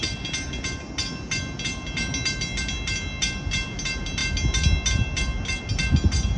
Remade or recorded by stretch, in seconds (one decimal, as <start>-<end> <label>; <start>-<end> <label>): 0.0-6.4 recorded